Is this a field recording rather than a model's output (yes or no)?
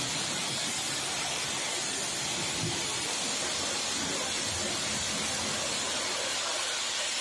yes